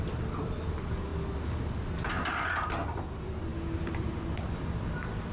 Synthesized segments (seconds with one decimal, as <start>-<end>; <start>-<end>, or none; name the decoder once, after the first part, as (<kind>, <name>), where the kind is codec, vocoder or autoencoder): 0.0-1.1 (vocoder, BigVGAN v2); 2.8-5.3